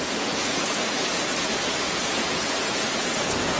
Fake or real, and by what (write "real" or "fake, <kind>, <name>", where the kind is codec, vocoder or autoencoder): fake, vocoder, Vocos